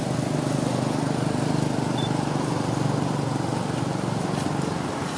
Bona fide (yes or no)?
yes